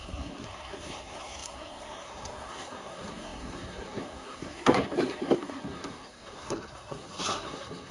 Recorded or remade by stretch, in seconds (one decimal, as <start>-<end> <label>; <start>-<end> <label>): 0.0-7.9 remade